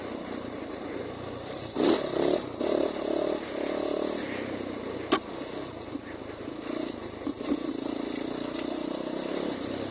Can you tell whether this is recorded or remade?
recorded